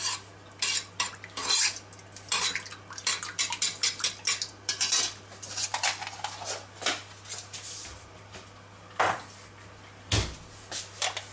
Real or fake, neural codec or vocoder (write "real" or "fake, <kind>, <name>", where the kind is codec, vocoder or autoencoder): real